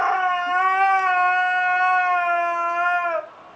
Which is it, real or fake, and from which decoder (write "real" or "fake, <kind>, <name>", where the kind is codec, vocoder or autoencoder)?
real